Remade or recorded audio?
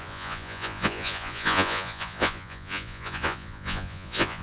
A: remade